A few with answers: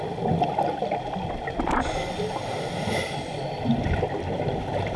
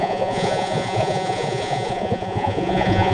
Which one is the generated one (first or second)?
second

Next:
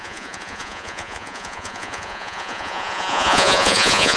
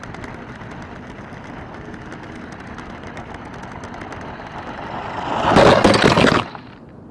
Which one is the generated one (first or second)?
first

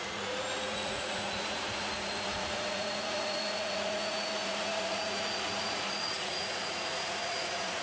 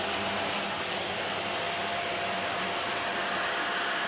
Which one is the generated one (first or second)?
first